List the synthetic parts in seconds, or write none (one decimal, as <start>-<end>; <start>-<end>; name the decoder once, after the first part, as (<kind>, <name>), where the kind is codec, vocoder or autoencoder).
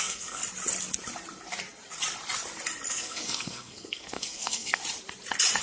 0.0-0.4 (codec, SNAC); 2.9-4.8